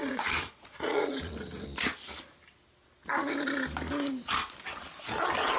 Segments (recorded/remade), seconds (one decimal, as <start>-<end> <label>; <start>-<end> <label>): 0.0-1.3 remade; 1.3-5.6 recorded